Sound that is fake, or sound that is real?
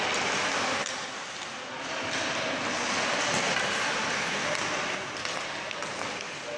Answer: real